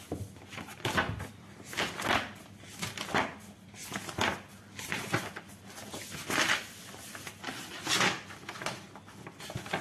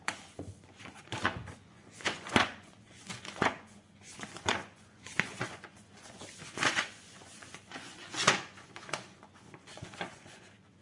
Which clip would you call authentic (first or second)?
first